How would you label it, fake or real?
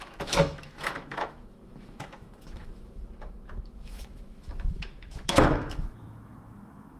fake